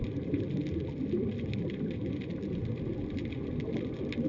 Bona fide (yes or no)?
yes